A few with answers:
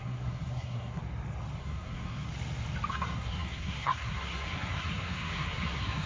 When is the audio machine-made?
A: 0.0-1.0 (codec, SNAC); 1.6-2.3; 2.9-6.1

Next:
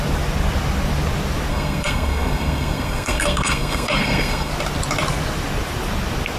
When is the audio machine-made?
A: 1.5-4.5 (codec, SNAC)

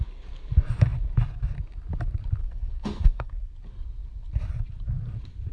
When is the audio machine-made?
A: 2.4-3.3 (codec, SNAC)

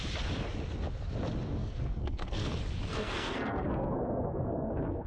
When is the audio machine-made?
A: 1.6-2.5 (codec, SNAC); 2.9-5.1